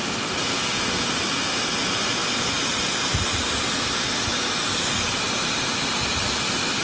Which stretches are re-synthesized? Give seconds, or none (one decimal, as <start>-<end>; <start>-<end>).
none

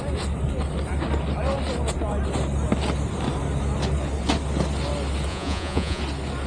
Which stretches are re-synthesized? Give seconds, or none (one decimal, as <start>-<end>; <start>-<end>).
5.3-6.0

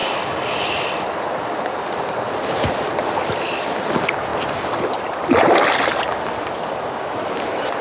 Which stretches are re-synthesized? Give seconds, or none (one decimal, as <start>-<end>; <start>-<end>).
none